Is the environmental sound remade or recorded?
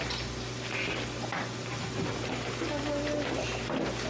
recorded